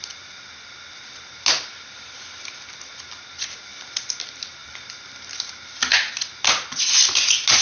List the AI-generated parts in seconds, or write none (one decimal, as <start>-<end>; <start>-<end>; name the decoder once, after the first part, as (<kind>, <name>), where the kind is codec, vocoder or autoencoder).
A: none